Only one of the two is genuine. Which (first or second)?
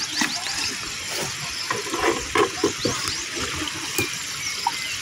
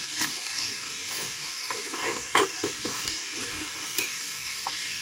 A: first